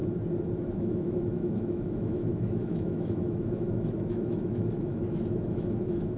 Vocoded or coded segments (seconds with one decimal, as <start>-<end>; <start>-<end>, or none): 0.6-6.2